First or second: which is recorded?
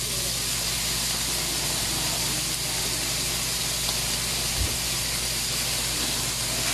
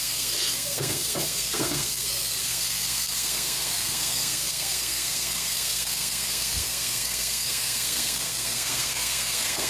first